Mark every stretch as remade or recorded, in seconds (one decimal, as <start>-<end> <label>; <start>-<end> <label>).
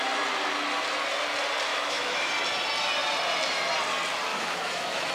0.0-1.7 recorded; 1.7-2.3 remade; 2.3-4.3 recorded; 4.3-5.1 remade